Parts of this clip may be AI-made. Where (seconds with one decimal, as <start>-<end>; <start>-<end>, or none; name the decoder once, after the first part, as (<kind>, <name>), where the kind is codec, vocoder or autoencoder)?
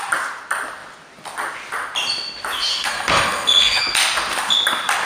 2.7-3.8 (codec, SNAC)